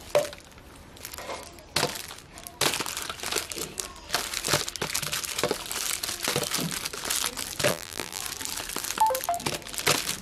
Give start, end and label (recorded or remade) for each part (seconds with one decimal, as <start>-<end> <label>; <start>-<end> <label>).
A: 0.0-7.7 recorded; 7.7-8.2 remade; 8.2-10.2 recorded